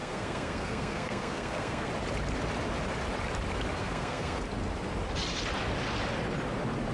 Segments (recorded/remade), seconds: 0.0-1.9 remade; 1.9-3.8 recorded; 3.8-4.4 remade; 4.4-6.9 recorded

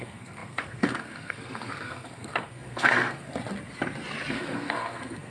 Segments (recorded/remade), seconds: 0.0-3.3 remade; 3.3-4.3 recorded; 4.3-5.3 remade

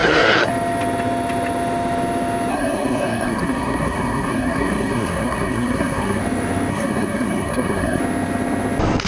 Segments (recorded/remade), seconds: 0.0-0.5 remade; 0.5-2.5 recorded; 2.5-6.2 remade; 6.2-6.7 recorded; 6.7-8.0 remade; 8.0-9.1 recorded

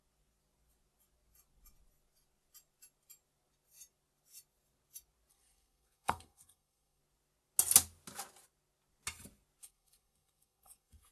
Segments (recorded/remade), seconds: 0.0-5.3 recorded; 5.3-7.0 remade; 7.0-9.6 recorded; 9.6-11.1 remade

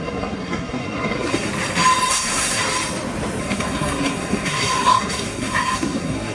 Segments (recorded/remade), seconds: 0.0-1.5 remade; 1.5-2.1 recorded; 2.1-2.6 remade; 2.6-3.4 recorded; 3.4-6.3 remade

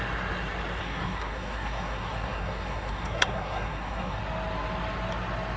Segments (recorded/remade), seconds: 0.0-0.8 recorded; 0.8-4.2 remade; 4.2-5.6 recorded

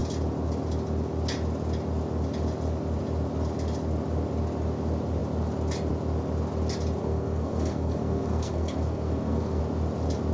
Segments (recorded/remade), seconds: 0.0-7.0 recorded; 7.0-9.6 remade; 9.6-10.3 recorded

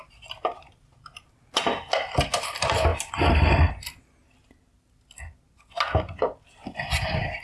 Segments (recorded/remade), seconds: 0.0-7.4 recorded